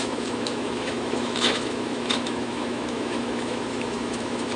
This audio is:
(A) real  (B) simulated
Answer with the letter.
B